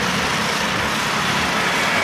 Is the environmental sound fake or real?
real